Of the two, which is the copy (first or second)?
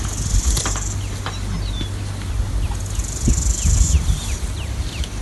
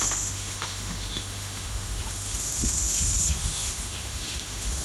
second